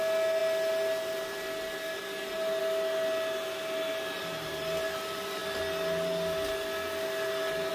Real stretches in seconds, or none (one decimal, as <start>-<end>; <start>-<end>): 0.0-7.7